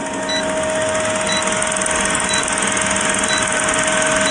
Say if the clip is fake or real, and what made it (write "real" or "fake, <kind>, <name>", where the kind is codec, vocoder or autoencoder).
real